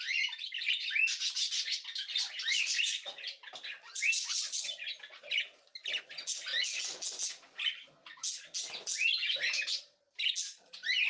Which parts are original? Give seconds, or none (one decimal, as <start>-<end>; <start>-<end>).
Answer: 0.0-11.1